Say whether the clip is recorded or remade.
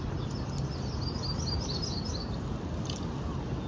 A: recorded